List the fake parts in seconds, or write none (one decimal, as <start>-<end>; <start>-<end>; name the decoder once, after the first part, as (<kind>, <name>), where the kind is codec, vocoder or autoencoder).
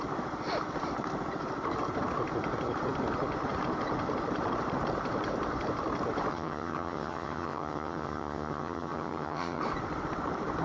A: 6.3-9.6 (vocoder, HiFi-GAN)